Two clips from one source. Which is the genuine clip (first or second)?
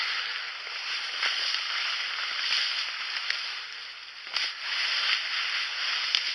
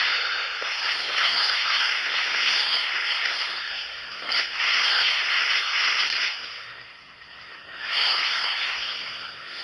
first